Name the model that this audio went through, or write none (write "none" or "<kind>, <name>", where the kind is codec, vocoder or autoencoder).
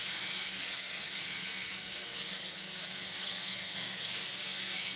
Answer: codec, SNAC